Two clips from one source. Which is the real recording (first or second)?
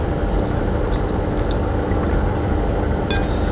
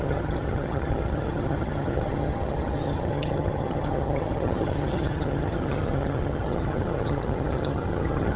first